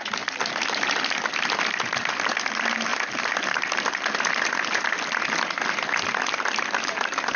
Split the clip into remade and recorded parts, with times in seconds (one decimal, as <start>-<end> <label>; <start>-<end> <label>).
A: 0.0-2.9 recorded; 2.9-6.8 remade; 6.8-7.4 recorded